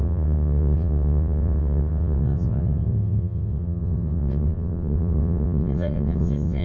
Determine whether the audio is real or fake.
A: fake